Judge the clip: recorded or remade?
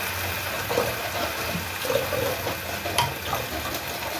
recorded